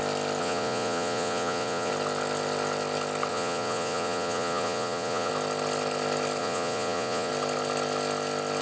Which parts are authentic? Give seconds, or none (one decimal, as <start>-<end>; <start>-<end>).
0.0-0.4; 1.9-3.3; 5.3-6.4; 7.3-8.6